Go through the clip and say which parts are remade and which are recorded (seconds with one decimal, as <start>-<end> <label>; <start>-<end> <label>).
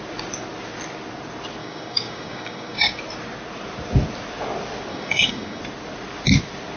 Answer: 0.0-1.6 recorded; 1.6-3.0 remade; 3.0-4.9 recorded; 4.9-5.6 remade; 5.6-6.8 recorded